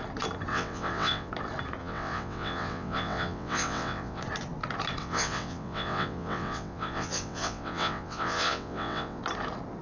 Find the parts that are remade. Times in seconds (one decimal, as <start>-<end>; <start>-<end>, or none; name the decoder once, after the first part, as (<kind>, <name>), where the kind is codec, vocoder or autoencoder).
0.5-1.3 (vocoder, WaveNeXt); 1.8-4.2; 5.0-9.2